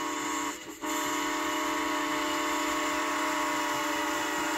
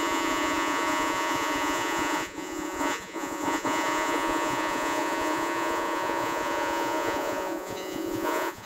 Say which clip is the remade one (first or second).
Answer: second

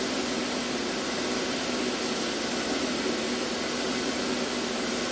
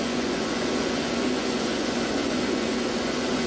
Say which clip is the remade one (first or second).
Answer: second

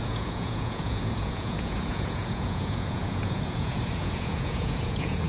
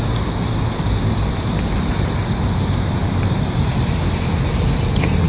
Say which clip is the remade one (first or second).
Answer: first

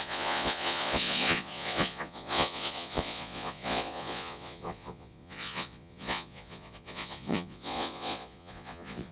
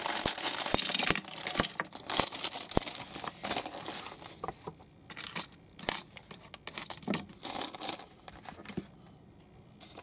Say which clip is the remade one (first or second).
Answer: first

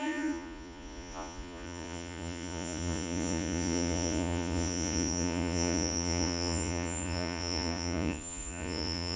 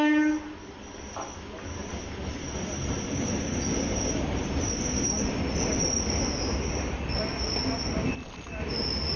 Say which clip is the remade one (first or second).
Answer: first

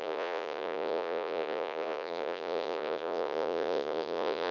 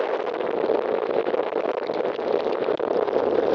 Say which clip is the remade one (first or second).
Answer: first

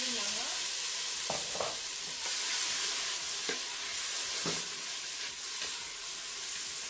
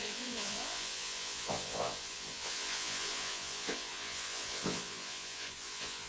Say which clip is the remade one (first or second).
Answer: second